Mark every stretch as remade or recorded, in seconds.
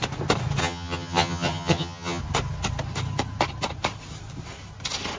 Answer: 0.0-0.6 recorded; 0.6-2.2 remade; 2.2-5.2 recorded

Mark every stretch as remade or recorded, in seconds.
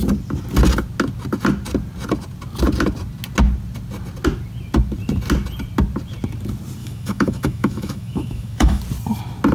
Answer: 0.0-6.8 recorded; 6.8-8.8 remade; 8.8-9.5 recorded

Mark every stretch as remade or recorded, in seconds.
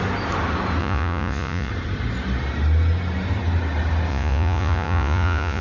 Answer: 0.0-0.8 recorded; 0.8-1.7 remade; 1.7-4.1 recorded; 4.1-5.6 remade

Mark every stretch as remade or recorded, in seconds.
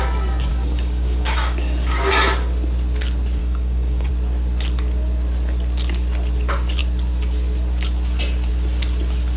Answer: 0.0-0.5 recorded; 0.5-2.1 remade; 2.1-3.4 recorded; 3.4-4.1 remade; 4.1-9.4 recorded